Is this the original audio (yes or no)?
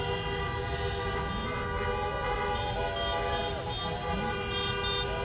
yes